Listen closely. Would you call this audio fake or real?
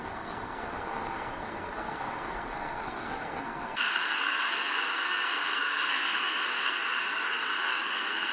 fake